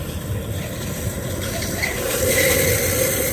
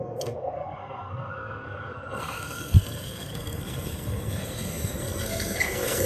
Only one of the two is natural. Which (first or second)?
first